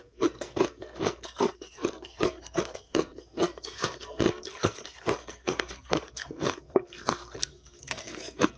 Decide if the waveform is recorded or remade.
remade